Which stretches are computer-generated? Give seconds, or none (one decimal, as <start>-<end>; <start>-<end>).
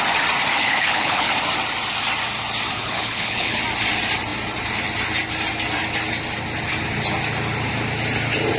0.5-1.3; 2.7-3.6